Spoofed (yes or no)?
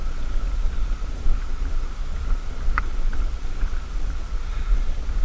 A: no